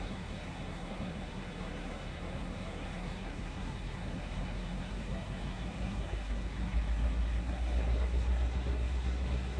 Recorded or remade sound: remade